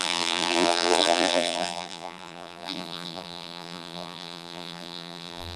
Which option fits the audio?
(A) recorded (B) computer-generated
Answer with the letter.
B